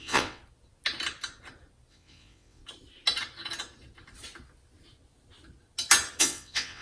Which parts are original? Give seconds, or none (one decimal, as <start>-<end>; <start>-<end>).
0.4-1.9; 2.6-6.2

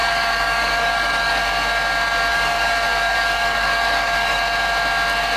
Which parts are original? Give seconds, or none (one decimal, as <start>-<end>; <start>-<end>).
1.4-2.3; 4.4-5.4

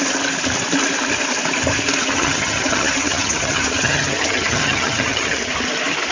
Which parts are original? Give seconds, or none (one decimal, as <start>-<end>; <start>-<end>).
0.0-2.1; 5.5-6.1

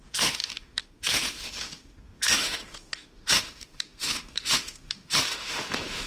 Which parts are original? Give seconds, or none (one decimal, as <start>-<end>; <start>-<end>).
none